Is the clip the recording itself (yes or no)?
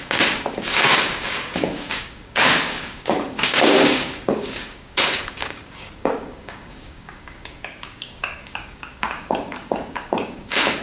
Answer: no